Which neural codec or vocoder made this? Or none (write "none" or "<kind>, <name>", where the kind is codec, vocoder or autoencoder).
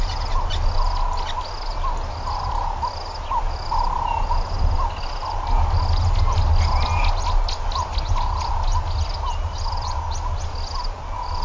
none